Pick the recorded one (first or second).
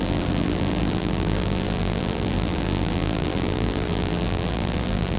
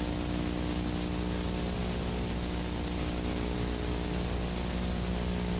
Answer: second